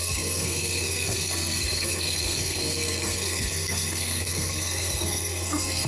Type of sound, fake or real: fake